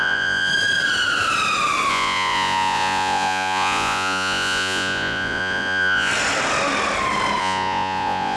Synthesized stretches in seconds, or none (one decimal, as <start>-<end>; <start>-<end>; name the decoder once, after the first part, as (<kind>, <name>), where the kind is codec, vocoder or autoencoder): 0.0-0.5 (vocoder, Vocos); 1.9-6.1; 7.4-8.4